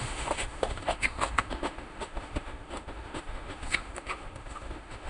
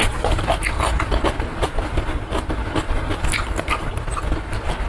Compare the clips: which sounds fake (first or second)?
first